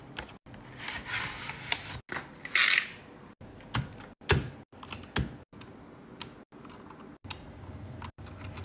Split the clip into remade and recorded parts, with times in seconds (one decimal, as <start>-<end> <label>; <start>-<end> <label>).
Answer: 0.0-8.6 recorded